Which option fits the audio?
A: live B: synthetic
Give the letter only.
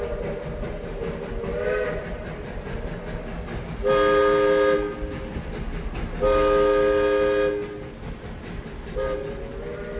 A